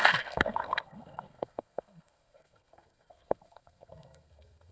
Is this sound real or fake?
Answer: fake